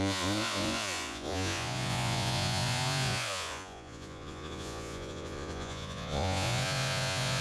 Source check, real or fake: fake